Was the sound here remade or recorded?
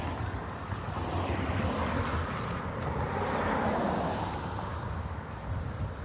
recorded